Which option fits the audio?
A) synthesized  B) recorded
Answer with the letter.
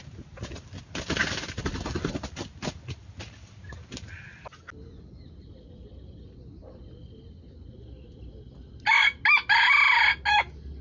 B